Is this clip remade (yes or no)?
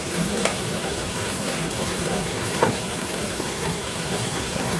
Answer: yes